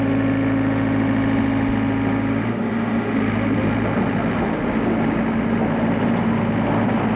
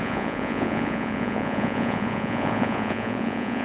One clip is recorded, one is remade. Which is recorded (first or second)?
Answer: first